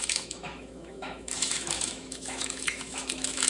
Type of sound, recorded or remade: remade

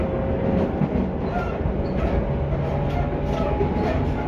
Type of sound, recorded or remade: recorded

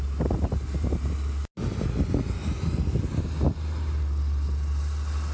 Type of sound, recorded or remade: recorded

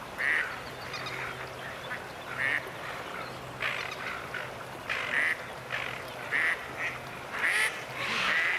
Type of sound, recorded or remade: recorded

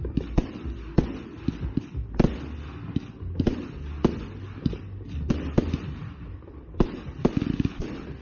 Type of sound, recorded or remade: recorded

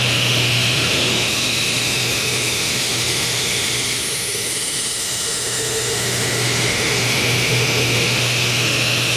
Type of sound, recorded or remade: remade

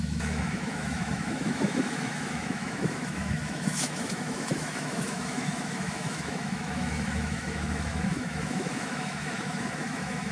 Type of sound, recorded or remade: remade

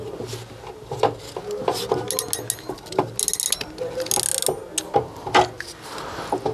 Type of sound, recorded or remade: recorded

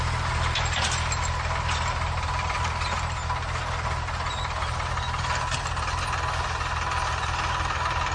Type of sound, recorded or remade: recorded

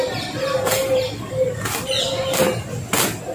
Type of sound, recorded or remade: recorded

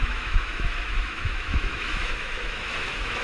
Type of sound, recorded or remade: remade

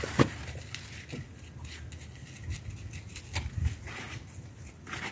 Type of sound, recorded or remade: recorded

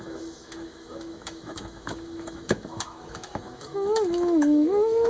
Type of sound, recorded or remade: remade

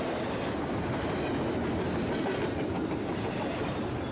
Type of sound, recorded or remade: recorded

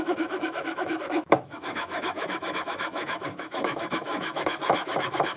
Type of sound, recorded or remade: remade